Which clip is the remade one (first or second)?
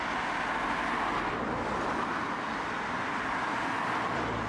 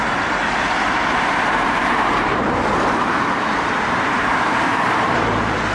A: second